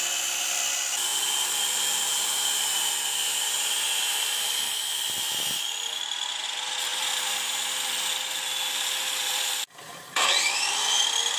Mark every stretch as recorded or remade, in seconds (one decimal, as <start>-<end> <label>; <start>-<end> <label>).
0.0-6.9 recorded; 6.9-10.7 remade; 10.7-11.4 recorded